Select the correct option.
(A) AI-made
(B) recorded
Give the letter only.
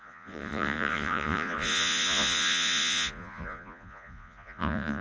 A